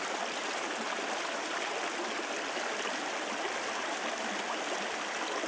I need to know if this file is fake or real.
real